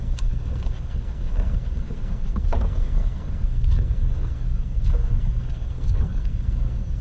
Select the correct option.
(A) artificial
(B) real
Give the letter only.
A